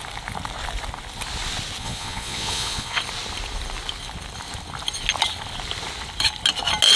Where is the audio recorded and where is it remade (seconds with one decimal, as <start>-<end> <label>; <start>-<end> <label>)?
0.0-1.8 recorded; 1.8-3.0 remade; 3.0-7.0 recorded